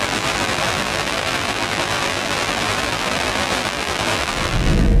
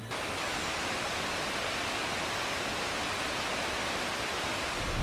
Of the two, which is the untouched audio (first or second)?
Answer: second